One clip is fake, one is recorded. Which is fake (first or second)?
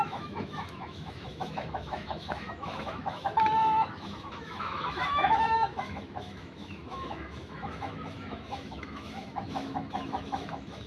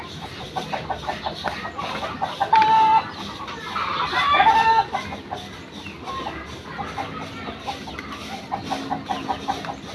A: first